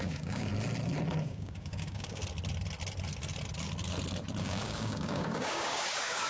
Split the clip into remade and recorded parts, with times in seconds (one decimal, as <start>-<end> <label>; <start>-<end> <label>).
0.0-0.5 remade; 0.5-1.2 recorded; 1.2-2.2 remade; 2.2-4.4 recorded; 4.4-6.3 remade